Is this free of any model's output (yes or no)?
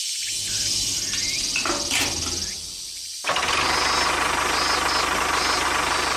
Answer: yes